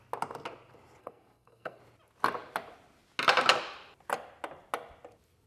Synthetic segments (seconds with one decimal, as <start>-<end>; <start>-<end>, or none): 1.0-1.8